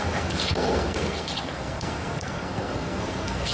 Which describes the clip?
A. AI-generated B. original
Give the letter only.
A